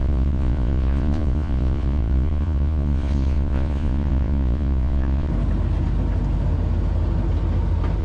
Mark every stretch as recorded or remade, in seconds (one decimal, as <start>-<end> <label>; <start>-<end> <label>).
0.0-5.3 remade; 5.3-8.0 recorded